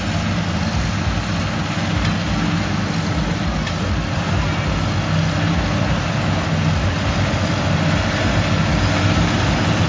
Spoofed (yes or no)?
no